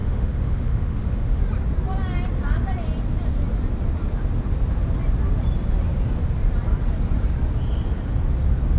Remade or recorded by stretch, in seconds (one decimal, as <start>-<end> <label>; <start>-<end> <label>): 0.0-1.4 remade; 1.4-8.8 recorded